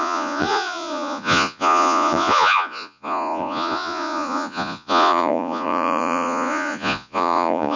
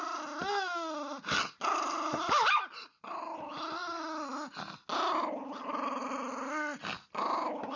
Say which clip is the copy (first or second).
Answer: first